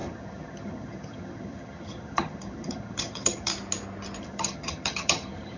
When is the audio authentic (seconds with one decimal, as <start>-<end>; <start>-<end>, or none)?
3.5-4.2